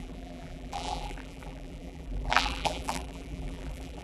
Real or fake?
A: fake